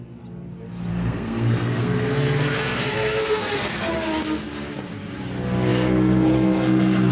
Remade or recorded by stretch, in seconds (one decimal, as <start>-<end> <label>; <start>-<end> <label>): 0.0-0.9 recorded; 0.9-3.9 remade; 3.9-5.7 recorded; 5.7-7.1 remade

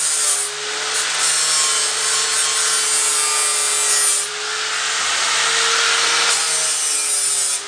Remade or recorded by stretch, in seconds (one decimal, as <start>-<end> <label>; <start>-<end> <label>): 0.0-7.7 recorded